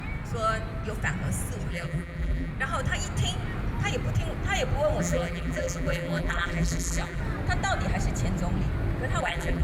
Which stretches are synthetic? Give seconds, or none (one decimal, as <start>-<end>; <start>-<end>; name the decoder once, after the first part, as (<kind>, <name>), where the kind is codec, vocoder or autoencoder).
1.7-2.5 (vocoder, BigVGAN v2); 5.0-7.2; 9.2-9.6

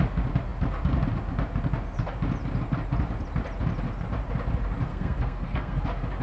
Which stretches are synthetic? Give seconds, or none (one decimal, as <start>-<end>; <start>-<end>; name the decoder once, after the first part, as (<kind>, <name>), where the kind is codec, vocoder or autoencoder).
4.9-5.8 (codec, SNAC)

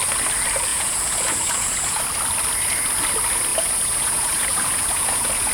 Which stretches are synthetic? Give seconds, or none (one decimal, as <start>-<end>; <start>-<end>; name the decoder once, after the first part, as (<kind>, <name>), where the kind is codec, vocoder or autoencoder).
0.7-2.0 (vocoder, Vocos); 3.5-5.5

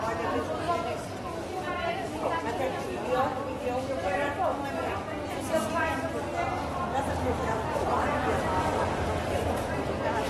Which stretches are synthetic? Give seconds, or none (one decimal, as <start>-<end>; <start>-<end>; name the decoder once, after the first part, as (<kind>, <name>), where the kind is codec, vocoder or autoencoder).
0.0-6.3 (vocoder, BigVGAN v2); 7.3-10.3

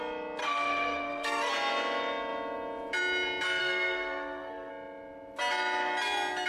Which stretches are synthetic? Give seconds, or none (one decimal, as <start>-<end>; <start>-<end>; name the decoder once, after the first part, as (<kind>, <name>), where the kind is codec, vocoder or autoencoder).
0.4-1.5 (codec, SNAC); 3.6-4.7

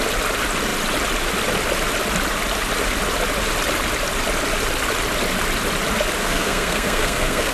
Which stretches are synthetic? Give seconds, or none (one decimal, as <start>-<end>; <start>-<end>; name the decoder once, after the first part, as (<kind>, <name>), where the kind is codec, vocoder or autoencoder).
6.2-7.5 (codec, SNAC)

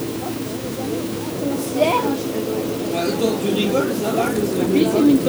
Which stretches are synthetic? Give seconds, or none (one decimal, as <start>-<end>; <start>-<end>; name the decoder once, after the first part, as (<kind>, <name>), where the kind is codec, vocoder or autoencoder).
0.0-2.1 (autoencoder, DAC-VAE); 3.8-4.2

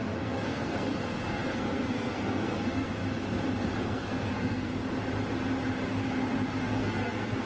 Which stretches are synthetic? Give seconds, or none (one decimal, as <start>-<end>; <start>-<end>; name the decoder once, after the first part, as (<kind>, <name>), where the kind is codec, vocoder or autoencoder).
0.0-3.0 (codec, SNAC); 3.8-4.7; 6.6-7.5